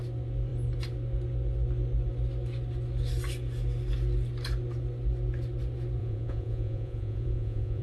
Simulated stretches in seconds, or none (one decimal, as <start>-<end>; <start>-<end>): 6.0-7.8